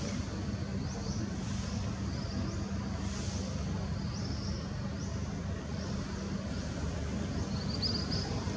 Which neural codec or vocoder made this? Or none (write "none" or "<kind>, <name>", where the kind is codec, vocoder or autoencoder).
none